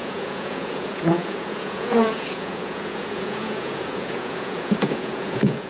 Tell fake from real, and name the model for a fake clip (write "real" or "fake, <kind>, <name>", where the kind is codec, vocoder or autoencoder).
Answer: fake, vocoder, Vocos